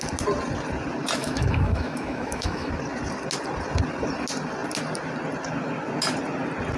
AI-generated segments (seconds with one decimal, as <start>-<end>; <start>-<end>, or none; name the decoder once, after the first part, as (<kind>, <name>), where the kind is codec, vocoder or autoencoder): 1.2-2.7 (autoencoder, DAC-VAE)